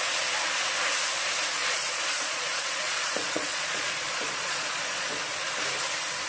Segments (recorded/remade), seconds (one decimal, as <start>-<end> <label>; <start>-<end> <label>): 0.0-1.6 recorded; 1.6-5.2 remade; 5.2-6.3 recorded